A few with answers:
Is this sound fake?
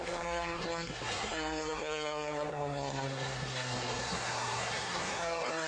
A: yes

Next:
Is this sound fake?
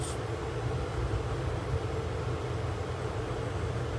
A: no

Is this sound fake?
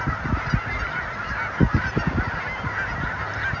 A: no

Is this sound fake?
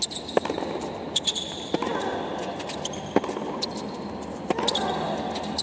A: no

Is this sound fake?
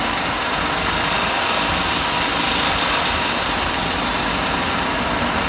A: no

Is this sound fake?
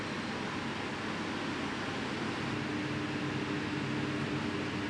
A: no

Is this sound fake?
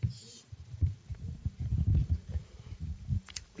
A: yes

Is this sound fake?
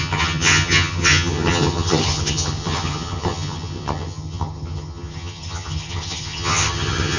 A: yes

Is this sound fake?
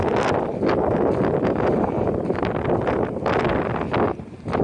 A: no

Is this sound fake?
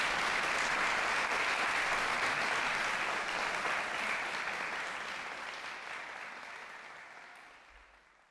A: no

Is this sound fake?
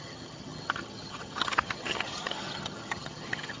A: yes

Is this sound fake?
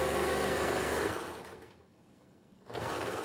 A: yes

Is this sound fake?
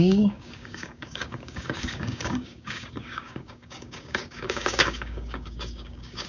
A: yes